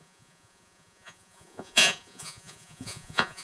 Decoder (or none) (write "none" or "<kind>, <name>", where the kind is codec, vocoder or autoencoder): vocoder, Vocos